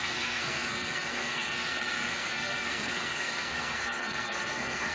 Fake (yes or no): yes